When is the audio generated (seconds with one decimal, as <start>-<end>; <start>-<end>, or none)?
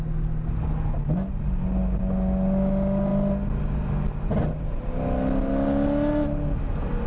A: none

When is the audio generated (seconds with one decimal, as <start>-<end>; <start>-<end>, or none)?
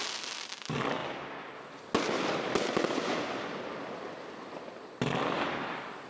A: none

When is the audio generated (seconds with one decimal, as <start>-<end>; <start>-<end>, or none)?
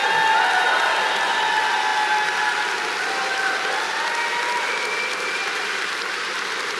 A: none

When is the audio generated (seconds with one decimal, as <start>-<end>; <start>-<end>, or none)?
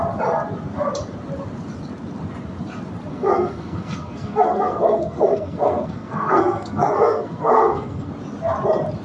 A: 3.1-8.1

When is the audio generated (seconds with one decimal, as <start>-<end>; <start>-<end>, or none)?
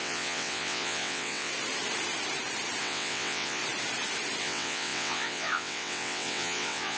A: 0.0-1.5; 2.8-3.6; 4.4-7.0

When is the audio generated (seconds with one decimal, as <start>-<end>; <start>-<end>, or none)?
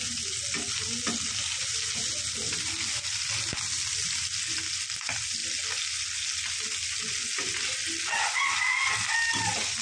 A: none